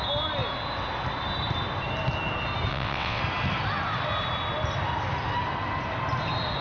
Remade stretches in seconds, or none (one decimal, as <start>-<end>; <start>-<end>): 2.7-3.2